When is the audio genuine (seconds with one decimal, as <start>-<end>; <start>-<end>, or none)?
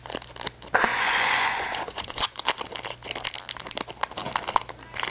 0.0-0.9; 2.4-5.1